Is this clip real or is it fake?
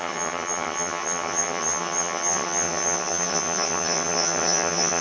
fake